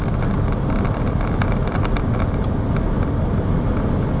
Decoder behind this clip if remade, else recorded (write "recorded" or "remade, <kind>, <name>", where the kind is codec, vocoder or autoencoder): recorded